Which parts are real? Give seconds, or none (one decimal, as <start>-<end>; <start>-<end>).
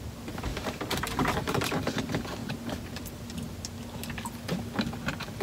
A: 0.0-0.5; 1.8-2.4; 3.0-5.4